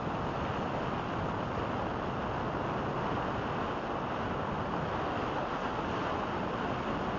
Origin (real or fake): real